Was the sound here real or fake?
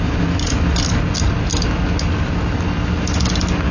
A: real